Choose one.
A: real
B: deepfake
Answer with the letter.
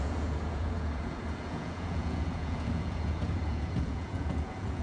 B